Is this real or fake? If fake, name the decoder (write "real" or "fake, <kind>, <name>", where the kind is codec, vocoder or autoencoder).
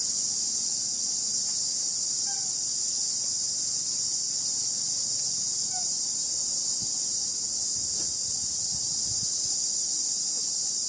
real